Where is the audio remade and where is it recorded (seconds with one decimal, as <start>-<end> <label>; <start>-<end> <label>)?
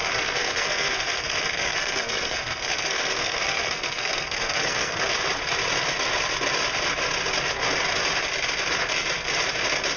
0.0-5.0 remade; 5.0-10.0 recorded